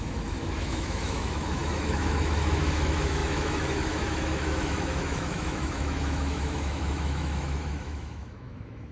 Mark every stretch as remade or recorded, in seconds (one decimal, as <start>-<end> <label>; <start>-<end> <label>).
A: 0.0-8.9 remade